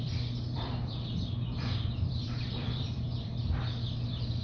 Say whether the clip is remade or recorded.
remade